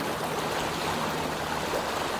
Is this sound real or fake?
real